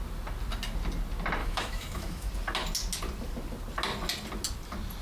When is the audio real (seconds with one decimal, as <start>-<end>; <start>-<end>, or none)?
0.0-1.4; 2.3-5.0